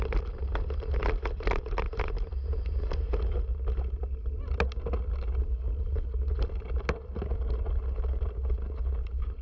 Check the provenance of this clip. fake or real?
real